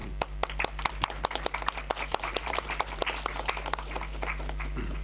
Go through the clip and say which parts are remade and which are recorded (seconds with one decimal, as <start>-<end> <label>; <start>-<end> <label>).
0.0-2.1 recorded; 2.1-3.0 remade; 3.0-5.0 recorded